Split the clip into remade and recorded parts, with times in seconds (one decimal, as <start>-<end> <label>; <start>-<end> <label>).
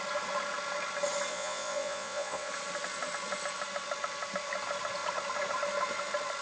0.0-1.3 recorded; 1.3-2.5 remade; 2.5-6.4 recorded